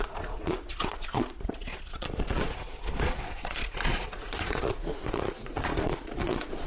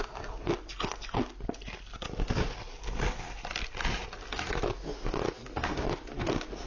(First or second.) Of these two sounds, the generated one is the first